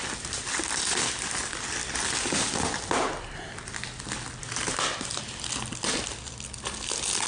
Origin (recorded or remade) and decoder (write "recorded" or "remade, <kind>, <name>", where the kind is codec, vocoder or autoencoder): recorded